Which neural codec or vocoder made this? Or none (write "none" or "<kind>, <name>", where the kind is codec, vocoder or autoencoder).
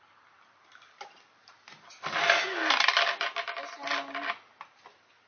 none